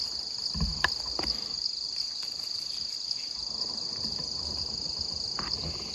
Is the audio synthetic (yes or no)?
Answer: no